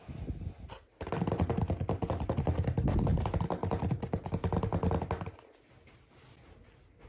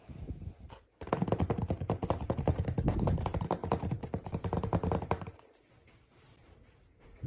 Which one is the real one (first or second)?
first